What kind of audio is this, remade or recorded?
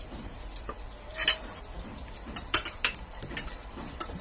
remade